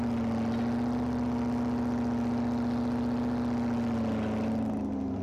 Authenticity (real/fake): real